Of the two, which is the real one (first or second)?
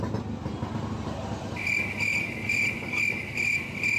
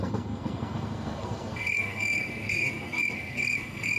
first